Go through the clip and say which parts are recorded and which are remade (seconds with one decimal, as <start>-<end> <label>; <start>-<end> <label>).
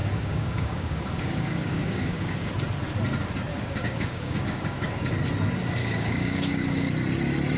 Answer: 0.0-2.5 remade; 2.5-3.5 recorded; 3.5-5.1 remade; 5.1-5.8 recorded; 5.8-6.9 remade; 6.9-7.6 recorded